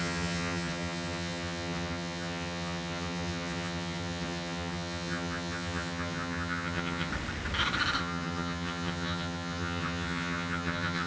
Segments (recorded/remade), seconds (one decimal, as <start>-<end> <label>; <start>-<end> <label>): 0.0-7.1 remade; 7.1-8.0 recorded; 8.0-11.1 remade